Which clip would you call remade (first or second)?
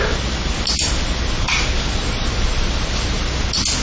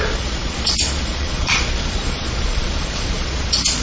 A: second